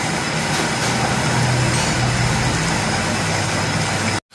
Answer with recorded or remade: recorded